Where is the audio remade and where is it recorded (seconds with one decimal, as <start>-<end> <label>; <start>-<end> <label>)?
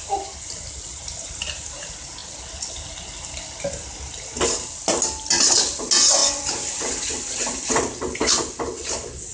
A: 0.0-9.3 recorded